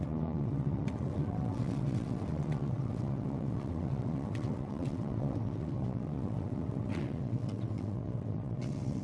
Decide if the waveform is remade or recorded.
remade